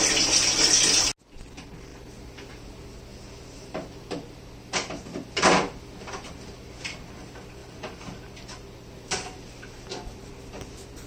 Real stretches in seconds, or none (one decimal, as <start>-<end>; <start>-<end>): 0.0-3.1; 6.5-7.6; 8.2-11.1